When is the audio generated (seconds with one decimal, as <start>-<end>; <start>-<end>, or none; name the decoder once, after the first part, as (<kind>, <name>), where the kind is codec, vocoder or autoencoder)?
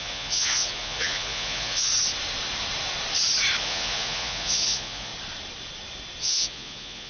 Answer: 0.0-1.9 (vocoder, Vocos); 3.6-5.1; 6.2-7.1